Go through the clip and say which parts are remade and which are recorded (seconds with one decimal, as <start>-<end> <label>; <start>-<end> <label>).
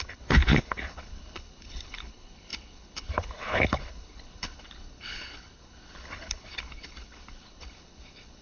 0.0-8.4 remade